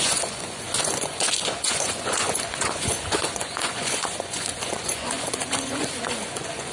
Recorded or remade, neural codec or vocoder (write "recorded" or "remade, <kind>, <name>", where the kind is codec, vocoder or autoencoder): remade, vocoder, Vocos